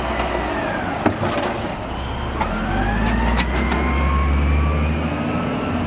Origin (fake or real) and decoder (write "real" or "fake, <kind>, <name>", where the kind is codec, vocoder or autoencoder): real